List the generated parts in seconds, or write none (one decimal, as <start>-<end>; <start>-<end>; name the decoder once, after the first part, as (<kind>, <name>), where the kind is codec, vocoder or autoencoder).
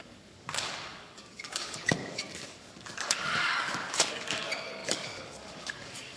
0.0-6.2 (codec, DAC)